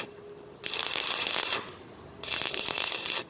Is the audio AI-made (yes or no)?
no